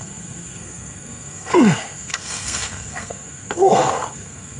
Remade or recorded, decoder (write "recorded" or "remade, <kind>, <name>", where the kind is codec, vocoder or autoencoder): remade, codec, SNAC